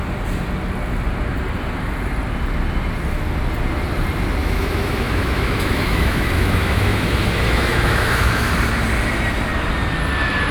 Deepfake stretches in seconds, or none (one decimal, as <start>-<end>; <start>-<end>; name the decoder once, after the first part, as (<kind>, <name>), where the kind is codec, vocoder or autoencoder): 4.4-8.5 (autoencoder, DAC-VAE)